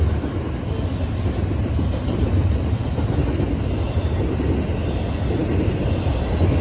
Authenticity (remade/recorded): recorded